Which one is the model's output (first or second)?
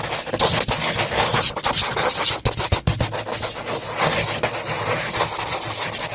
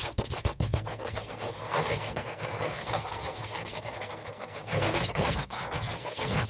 second